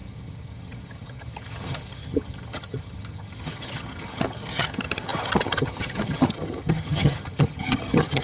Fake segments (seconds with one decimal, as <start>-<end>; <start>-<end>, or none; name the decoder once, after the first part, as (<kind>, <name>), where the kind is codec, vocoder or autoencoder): 0.0-8.2 (vocoder, HiFi-GAN)